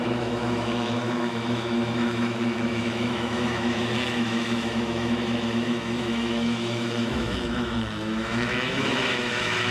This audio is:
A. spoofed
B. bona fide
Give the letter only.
A